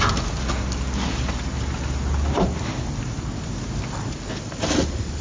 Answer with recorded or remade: recorded